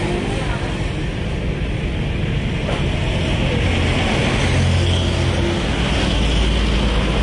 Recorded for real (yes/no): yes